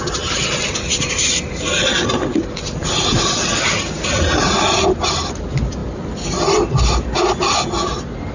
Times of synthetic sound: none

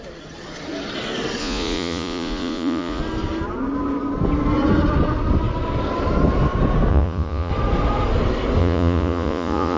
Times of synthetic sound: 1.4-3.0 (vocoder, Vocos); 6.9-7.5; 8.6-9.8